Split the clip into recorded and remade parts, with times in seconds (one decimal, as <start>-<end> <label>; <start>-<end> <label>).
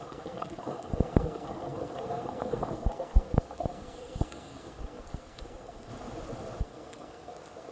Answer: 0.0-5.9 remade; 5.9-6.6 recorded; 6.6-7.7 remade